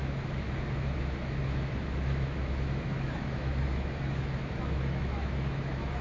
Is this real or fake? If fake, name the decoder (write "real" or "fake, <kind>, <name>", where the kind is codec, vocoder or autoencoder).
fake, autoencoder, DAC-VAE